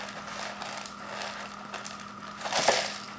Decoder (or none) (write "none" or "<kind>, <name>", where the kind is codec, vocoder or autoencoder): none